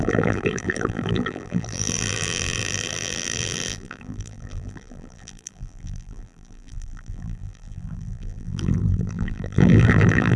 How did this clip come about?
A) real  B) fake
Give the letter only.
B